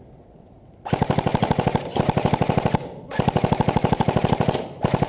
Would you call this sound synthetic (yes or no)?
no